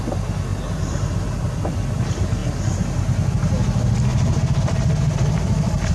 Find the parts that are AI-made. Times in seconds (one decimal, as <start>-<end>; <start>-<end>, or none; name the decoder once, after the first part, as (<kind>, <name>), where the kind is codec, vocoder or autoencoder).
4.1-5.9 (vocoder, BigVGAN v2)